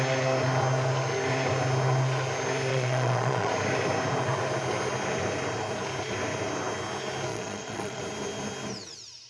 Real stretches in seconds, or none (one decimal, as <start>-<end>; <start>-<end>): 0.0-2.7; 3.5-7.3; 8.0-9.3